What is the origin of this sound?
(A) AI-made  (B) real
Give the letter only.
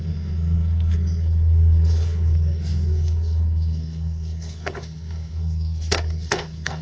A